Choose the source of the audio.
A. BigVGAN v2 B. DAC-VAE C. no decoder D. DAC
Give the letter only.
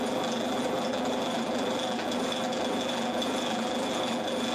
A